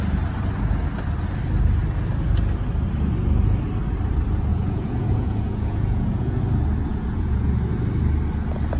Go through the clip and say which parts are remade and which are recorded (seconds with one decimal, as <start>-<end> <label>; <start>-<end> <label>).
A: 0.0-4.5 recorded; 4.5-6.4 remade; 6.4-6.9 recorded; 6.9-7.5 remade; 7.5-8.8 recorded